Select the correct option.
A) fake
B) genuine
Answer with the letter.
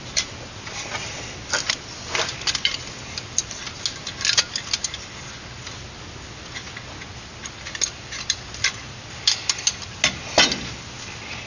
B